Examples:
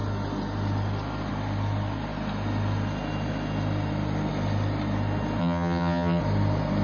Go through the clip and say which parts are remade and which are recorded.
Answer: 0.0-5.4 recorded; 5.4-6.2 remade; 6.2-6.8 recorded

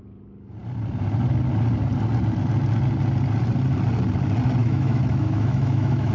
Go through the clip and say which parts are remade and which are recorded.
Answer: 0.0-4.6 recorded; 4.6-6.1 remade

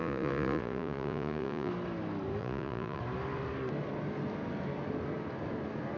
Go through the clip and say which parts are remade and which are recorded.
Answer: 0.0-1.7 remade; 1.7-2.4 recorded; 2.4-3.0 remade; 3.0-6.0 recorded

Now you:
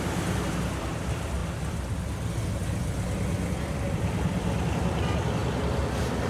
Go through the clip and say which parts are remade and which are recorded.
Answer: 0.0-2.6 remade; 2.6-4.6 recorded; 4.6-5.4 remade; 5.4-6.3 recorded

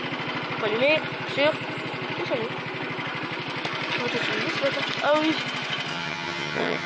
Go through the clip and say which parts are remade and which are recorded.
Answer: 0.0-5.9 recorded; 5.9-6.9 remade

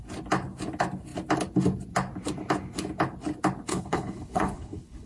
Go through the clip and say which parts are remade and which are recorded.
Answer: 0.0-3.7 recorded; 3.7-5.1 remade